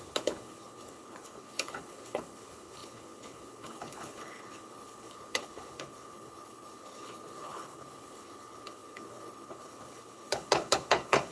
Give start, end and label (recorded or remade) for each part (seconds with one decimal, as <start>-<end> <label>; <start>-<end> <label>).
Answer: 0.0-11.3 remade